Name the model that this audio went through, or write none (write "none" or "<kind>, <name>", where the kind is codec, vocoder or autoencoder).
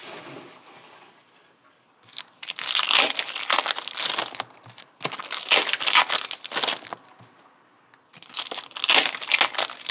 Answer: none